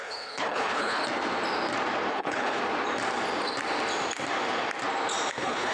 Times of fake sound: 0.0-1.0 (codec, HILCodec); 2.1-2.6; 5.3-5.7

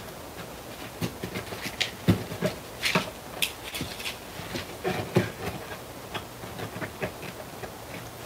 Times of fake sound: none

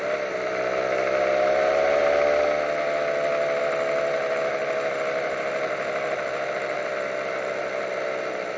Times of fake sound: none

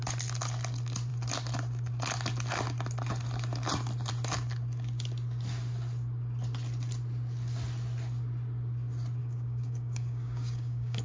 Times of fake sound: 9.2-11.0 (codec, DAC)